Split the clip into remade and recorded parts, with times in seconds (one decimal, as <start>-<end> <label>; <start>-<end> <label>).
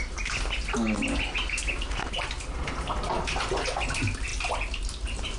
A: 0.0-5.4 recorded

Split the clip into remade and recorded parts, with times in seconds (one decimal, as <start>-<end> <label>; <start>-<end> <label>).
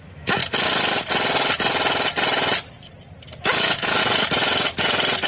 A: 0.0-0.4 remade; 0.4-3.4 recorded; 3.4-4.0 remade; 4.0-5.3 recorded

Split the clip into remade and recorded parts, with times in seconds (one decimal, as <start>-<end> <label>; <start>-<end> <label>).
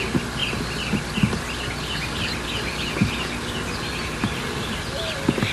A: 0.0-5.5 recorded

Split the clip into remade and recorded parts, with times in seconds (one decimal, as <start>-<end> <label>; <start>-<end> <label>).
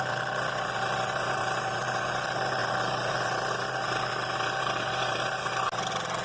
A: 0.0-6.2 recorded